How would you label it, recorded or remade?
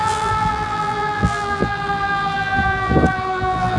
remade